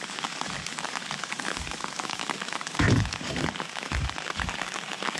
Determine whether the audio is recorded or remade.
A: remade